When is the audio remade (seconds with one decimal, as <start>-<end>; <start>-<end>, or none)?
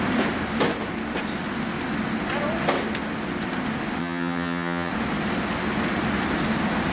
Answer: 4.0-4.9